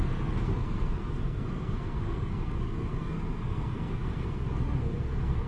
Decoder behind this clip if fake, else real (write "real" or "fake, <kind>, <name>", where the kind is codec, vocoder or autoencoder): fake, codec, SNAC